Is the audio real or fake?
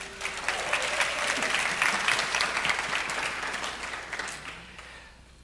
real